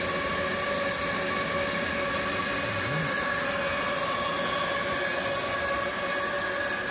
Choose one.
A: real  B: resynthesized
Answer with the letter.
A